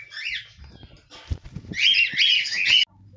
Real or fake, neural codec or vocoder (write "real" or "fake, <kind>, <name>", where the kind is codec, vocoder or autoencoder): real